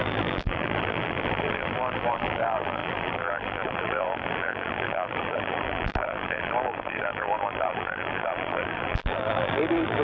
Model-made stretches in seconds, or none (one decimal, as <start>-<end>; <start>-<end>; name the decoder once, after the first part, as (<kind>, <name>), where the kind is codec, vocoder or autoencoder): 0.0-10.0 (vocoder, BigVGAN v2)